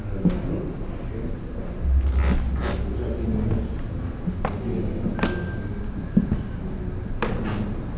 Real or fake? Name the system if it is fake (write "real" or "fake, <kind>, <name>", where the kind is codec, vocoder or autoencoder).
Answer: real